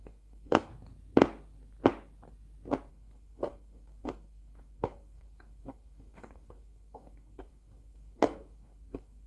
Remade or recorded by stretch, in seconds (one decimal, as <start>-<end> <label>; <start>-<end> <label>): 0.0-0.7 remade; 0.7-2.9 recorded; 2.9-9.3 remade